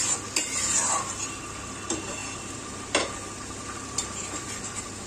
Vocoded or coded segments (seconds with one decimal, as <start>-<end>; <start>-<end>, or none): none